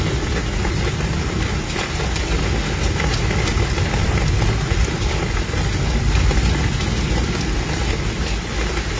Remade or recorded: recorded